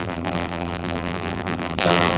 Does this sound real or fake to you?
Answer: fake